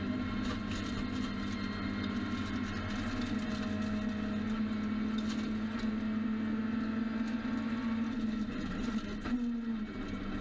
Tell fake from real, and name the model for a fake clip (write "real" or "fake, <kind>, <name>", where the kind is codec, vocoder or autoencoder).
real